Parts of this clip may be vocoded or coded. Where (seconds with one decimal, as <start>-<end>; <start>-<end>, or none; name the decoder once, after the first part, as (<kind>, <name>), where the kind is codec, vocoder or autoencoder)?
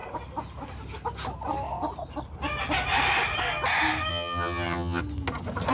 4.1-5.0 (vocoder, HiFi-GAN)